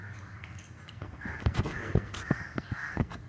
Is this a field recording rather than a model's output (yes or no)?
no